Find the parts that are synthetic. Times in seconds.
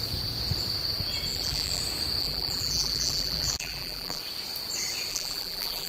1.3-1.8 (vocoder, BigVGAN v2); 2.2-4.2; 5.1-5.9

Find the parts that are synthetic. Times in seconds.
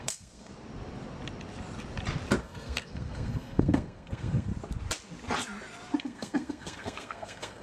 0.0-0.5 (codec, SNAC); 2.4-4.5; 6.0-7.6